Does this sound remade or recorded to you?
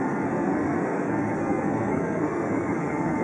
remade